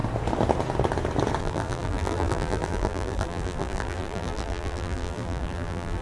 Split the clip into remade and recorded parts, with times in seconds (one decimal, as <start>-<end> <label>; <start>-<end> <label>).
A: 0.0-1.4 recorded; 1.4-6.0 remade